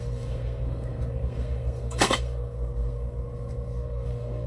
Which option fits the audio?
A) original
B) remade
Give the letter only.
B